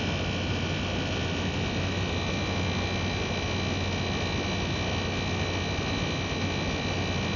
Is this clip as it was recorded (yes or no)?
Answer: yes